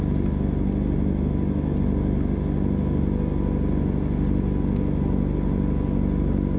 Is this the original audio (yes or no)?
yes